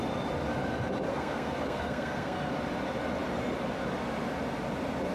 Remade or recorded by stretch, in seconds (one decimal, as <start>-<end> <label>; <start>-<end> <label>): 0.0-1.1 recorded; 1.1-2.5 remade; 2.5-5.1 recorded